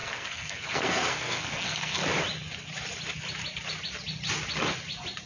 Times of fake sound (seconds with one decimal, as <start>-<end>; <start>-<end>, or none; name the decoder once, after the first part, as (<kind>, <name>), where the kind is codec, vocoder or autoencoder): 0.0-2.0 (codec, SNAC)